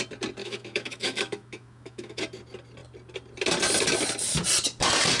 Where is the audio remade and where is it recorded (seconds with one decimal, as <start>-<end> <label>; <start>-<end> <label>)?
0.0-0.4 recorded; 0.4-2.2 remade; 2.2-5.2 recorded